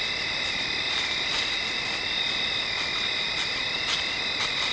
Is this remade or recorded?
recorded